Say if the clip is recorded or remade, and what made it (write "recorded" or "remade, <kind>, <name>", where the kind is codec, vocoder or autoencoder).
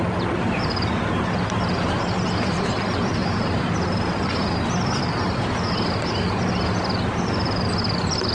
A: remade, vocoder, BigVGAN v2